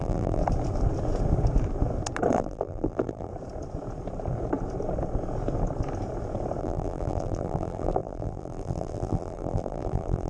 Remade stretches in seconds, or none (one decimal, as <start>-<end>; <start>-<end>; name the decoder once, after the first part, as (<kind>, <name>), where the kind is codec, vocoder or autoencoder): 0.0-0.4 (vocoder, BigVGAN v2); 2.3-3.3; 6.6-10.3